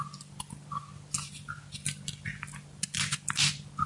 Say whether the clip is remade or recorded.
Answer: recorded